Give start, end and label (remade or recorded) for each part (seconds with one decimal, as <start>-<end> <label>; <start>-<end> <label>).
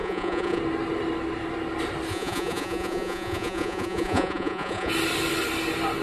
0.0-0.6 remade; 0.6-2.1 recorded; 2.1-4.9 remade; 4.9-6.0 recorded